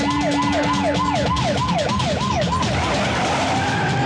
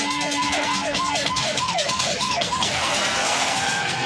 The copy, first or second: second